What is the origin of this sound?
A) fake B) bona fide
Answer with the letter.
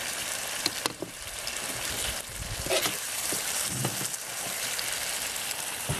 A